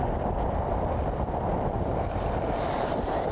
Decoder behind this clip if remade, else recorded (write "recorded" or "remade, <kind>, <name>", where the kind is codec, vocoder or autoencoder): recorded